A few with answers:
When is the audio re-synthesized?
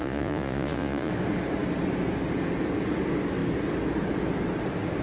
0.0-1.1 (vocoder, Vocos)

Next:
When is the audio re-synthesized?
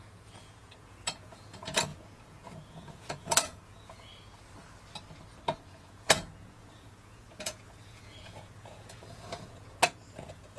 0.0-4.1 (vocoder, Vocos); 5.7-10.6